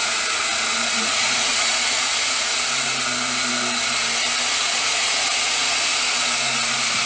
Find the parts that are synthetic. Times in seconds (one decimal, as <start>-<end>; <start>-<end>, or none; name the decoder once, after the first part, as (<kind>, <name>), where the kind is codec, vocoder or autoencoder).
0.0-0.4 (vocoder, Vocos); 0.9-2.5; 4.5-5.9